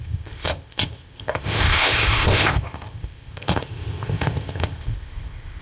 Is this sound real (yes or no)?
no